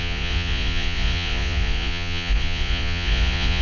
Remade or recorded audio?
remade